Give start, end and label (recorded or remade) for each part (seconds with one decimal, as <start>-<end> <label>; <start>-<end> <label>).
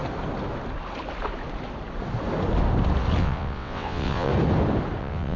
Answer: 0.0-3.2 recorded; 3.2-4.3 remade; 4.3-5.0 recorded; 5.0-5.4 remade